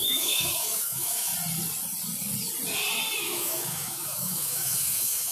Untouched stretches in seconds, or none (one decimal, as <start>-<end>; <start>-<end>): 1.3-3.2